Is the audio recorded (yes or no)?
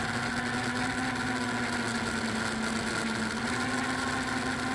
yes